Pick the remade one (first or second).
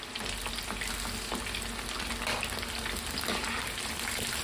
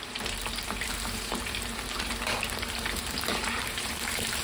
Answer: second